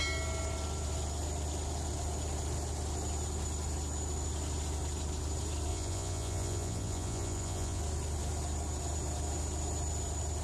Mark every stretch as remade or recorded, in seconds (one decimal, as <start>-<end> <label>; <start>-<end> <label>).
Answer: 0.0-5.7 recorded; 5.7-7.8 remade; 7.8-10.4 recorded